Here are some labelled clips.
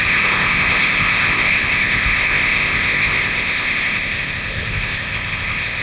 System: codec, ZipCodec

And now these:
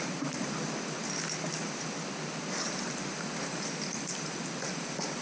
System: none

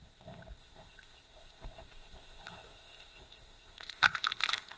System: codec, ZipCodec